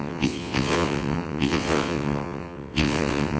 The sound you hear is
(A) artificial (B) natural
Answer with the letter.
A